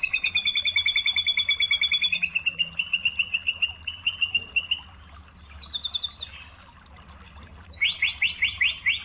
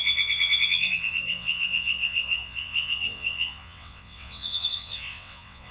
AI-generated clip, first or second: second